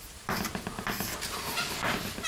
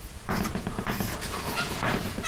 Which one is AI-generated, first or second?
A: second